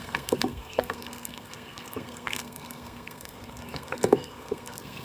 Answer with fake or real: fake